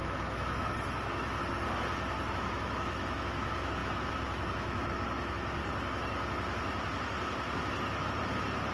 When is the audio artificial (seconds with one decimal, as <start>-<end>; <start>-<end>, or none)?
0.0-1.4; 2.3-5.6